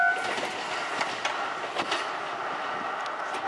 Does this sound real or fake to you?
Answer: real